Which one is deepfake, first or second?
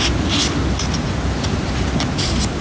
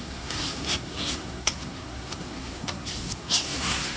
second